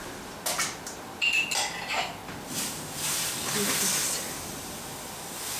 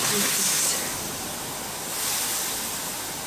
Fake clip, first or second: first